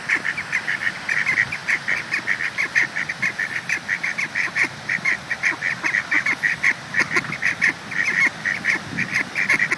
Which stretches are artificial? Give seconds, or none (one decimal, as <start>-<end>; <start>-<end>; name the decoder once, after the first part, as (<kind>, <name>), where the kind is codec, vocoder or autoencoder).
none